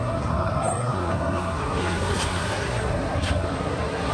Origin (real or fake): fake